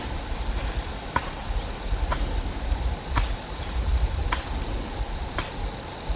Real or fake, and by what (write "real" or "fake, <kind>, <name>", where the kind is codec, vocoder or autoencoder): real